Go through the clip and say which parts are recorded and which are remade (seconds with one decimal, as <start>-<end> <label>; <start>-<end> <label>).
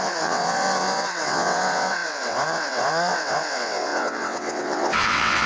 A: 0.0-5.5 remade